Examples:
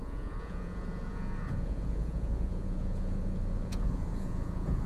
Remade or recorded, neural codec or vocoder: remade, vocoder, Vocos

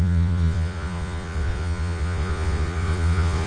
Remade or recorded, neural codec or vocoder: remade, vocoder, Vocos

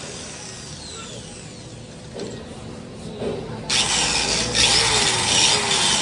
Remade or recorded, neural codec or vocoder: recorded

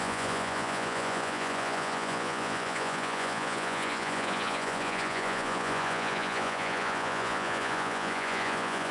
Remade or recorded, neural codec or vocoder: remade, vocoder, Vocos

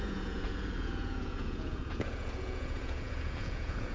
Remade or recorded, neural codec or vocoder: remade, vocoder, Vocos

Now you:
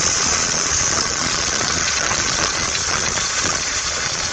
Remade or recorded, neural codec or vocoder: remade, vocoder, Vocos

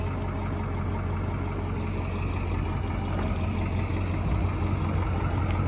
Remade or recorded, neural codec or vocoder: recorded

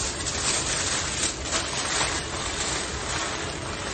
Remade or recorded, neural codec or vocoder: recorded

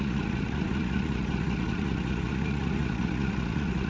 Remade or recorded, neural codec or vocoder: remade, vocoder, Vocos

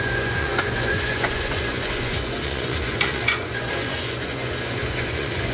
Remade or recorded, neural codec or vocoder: remade, vocoder, Vocos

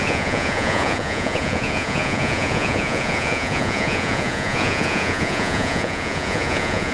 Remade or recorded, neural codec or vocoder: remade, vocoder, Vocos